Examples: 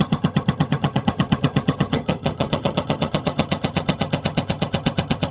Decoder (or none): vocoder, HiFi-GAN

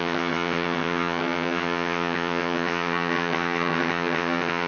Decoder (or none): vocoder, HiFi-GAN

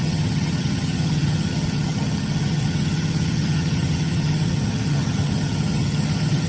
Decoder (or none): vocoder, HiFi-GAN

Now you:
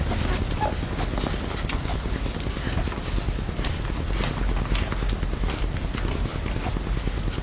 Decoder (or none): none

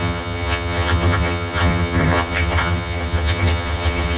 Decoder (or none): vocoder, HiFi-GAN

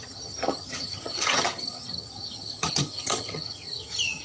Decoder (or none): vocoder, HiFi-GAN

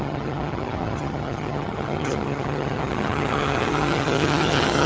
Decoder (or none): vocoder, HiFi-GAN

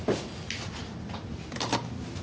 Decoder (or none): none